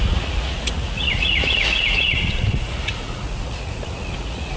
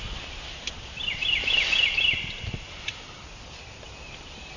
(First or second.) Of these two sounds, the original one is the second